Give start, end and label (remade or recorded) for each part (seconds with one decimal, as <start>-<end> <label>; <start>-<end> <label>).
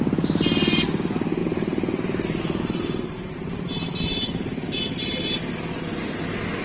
0.0-1.4 recorded; 1.4-5.4 remade; 5.4-6.6 recorded